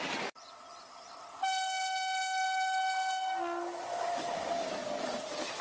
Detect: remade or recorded recorded